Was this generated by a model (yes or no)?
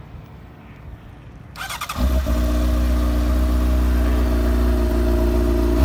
no